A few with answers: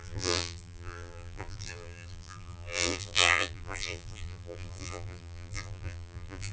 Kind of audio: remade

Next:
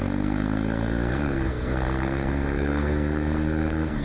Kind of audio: remade